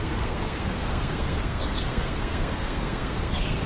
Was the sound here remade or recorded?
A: remade